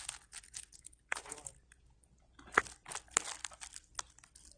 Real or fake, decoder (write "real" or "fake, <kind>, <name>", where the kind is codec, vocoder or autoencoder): real